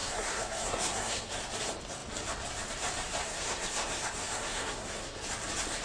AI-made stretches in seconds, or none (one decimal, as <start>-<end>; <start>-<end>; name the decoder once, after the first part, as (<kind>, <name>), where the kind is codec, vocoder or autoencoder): 0.0-1.4 (codec, SNAC); 3.2-5.2